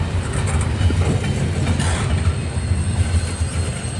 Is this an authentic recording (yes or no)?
yes